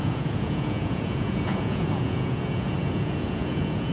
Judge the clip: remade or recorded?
remade